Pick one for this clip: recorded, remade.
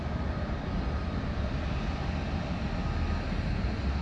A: recorded